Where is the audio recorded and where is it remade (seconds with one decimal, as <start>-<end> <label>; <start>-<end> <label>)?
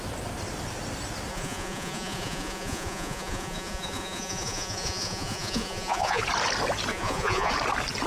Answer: 0.0-1.3 recorded; 1.3-6.2 remade; 6.2-6.9 recorded; 6.9-7.5 remade; 7.5-8.1 recorded